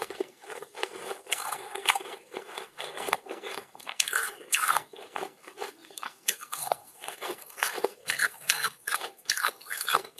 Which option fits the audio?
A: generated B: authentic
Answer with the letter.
A